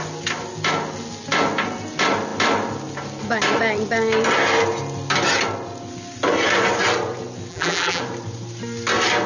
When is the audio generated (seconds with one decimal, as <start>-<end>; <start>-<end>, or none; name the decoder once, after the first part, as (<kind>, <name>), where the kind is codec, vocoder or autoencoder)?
7.5-8.0 (vocoder, BigVGAN v2)

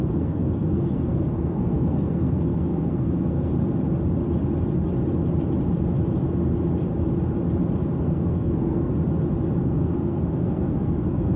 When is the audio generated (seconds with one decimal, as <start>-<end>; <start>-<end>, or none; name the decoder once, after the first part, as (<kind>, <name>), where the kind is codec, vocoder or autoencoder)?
0.0-3.5 (codec, SNAC); 8.0-8.9; 9.6-11.4

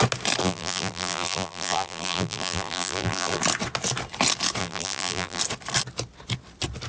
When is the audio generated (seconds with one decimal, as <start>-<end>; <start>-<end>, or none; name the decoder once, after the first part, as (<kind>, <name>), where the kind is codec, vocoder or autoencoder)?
0.4-3.4 (vocoder, BigVGAN v2); 4.6-5.4

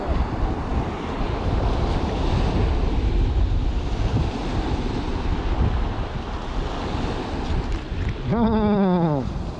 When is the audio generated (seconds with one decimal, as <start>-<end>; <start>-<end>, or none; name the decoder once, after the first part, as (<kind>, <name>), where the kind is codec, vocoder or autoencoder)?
none

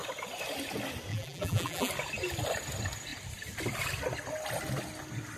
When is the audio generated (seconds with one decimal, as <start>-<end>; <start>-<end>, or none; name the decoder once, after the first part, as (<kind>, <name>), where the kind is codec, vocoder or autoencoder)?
1.1-1.9 (vocoder, BigVGAN v2)